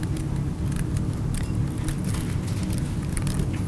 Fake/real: real